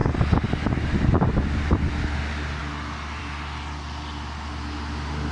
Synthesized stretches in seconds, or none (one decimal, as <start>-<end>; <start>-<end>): none